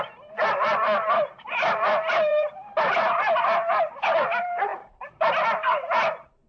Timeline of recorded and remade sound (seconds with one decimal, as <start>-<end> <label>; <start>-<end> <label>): 0.0-2.3 recorded; 2.3-3.0 remade; 3.0-4.7 recorded; 4.7-5.3 remade; 5.3-6.5 recorded